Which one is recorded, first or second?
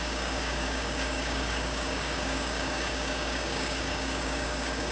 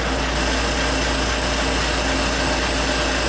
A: second